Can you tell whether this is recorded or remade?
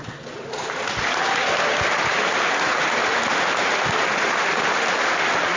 recorded